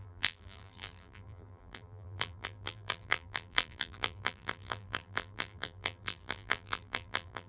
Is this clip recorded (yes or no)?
no